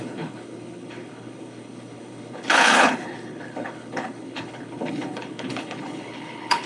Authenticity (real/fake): fake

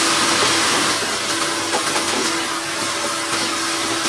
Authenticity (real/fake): real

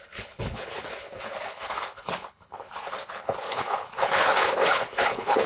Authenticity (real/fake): fake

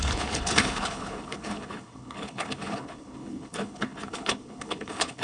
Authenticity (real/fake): fake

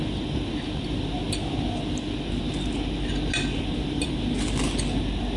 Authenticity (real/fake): real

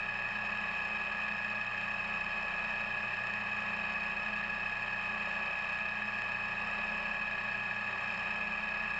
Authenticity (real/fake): real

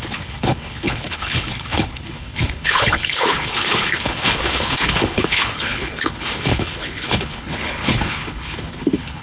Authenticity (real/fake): fake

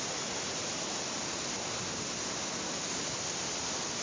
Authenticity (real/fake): real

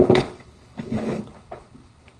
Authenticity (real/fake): fake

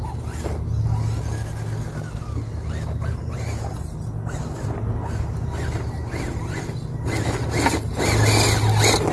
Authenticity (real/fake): real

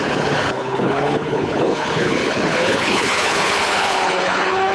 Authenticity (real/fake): fake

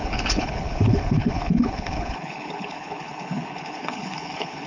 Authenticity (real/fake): fake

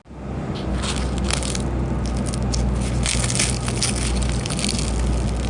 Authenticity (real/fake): real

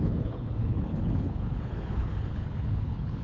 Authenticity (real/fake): fake